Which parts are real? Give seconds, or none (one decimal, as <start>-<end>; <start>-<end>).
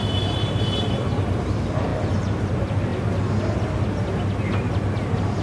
1.9-2.5; 2.9-5.0